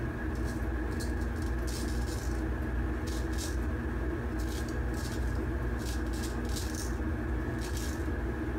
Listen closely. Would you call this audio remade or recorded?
recorded